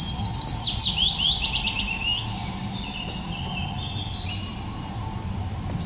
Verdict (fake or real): real